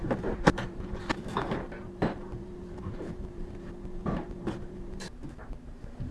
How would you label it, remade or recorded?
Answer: remade